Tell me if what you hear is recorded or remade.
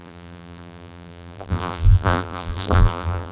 remade